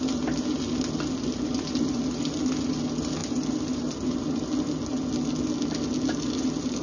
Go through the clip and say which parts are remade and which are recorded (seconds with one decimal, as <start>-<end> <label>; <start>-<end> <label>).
0.0-6.8 recorded